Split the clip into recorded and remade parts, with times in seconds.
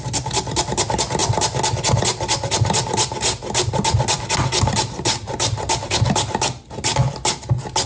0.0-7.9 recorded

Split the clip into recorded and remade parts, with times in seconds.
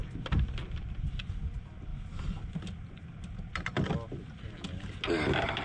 0.0-5.6 recorded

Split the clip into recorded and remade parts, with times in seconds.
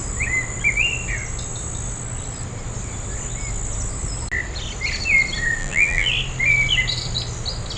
0.0-5.6 recorded; 5.6-6.1 remade; 6.1-7.8 recorded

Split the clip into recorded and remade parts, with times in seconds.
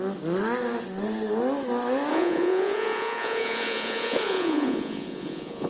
0.0-2.1 recorded; 2.1-5.7 remade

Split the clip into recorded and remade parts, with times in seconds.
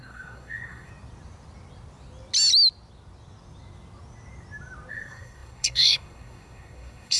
0.0-0.9 remade; 0.9-4.9 recorded; 4.9-7.2 remade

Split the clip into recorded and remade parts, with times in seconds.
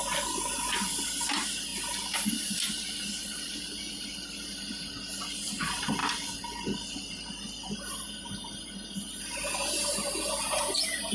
0.0-11.1 recorded